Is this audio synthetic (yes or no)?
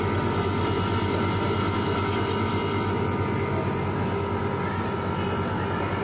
no